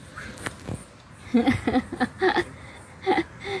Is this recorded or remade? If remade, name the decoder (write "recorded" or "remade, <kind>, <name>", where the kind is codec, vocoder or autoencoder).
recorded